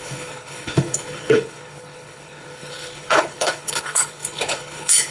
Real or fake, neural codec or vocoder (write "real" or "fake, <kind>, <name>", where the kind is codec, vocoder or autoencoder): fake, codec, HILCodec